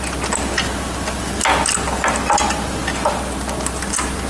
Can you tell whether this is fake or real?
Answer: real